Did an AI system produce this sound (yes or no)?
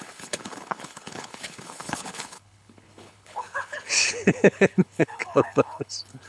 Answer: yes